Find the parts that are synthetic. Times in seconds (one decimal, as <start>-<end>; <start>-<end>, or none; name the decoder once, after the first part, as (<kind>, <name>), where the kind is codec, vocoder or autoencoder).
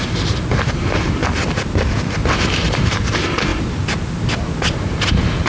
0.0-1.2 (vocoder, BigVGAN v2); 2.3-3.5; 4.6-5.5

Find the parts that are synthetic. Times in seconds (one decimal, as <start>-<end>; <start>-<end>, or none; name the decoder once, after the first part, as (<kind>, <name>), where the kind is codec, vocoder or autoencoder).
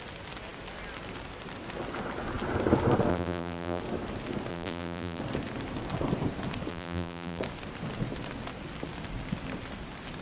3.1-3.8 (vocoder, BigVGAN v2); 4.5-5.2; 6.7-7.4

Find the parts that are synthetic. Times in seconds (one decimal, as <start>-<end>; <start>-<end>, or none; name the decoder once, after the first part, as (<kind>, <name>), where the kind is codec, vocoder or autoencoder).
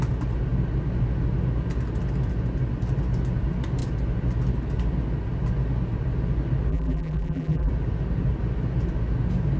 6.7-7.7 (vocoder, BigVGAN v2)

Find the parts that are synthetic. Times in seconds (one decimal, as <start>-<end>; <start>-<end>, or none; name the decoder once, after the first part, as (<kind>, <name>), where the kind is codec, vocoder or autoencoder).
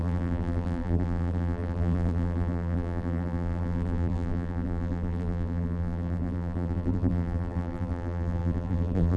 0.0-9.2 (vocoder, BigVGAN v2)